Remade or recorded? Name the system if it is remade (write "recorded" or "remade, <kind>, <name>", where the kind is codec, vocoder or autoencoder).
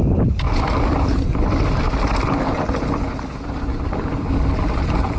recorded